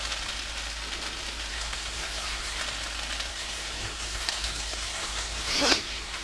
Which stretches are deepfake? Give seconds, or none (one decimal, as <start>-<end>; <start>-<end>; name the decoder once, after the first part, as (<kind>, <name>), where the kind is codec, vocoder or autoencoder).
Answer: 1.5-2.6 (codec, SNAC); 3.3-6.2